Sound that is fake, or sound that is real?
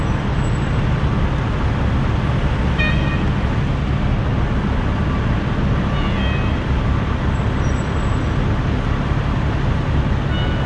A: real